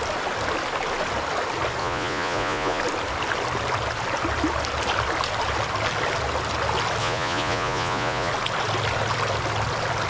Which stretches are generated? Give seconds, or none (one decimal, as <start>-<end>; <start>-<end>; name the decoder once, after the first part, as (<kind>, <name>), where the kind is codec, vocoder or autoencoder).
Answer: 1.8-2.8 (vocoder, Vocos); 7.0-8.3